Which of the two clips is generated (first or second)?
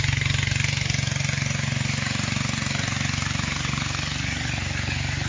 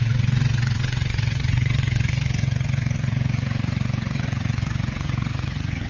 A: second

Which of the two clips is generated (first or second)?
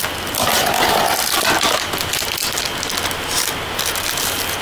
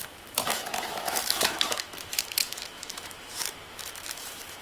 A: second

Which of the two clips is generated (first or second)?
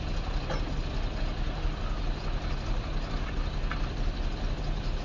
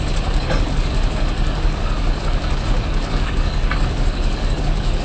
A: second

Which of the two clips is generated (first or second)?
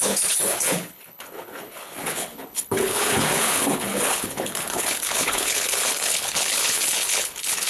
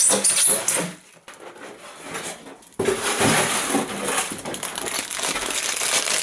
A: first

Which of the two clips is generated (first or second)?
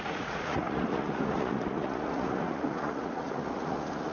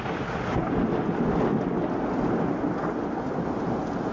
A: first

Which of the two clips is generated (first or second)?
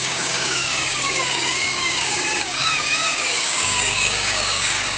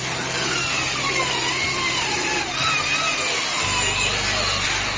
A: first